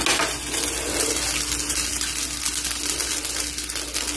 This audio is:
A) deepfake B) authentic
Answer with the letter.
B